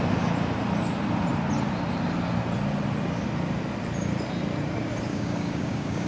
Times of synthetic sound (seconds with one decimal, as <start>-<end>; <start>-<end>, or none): 5.1-6.1